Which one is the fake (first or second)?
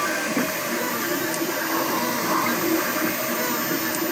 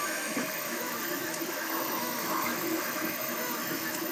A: second